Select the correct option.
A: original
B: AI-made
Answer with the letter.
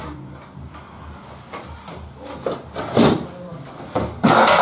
A